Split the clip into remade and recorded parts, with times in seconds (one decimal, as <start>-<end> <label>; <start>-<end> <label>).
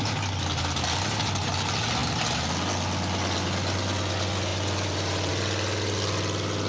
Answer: 0.0-4.5 recorded; 4.5-5.3 remade; 5.3-6.7 recorded